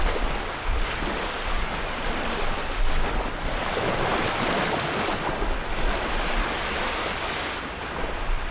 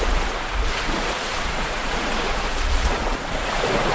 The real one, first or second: first